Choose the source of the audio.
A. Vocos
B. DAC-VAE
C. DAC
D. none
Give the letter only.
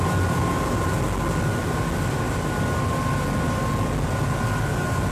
D